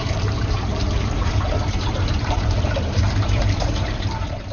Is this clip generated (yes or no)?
yes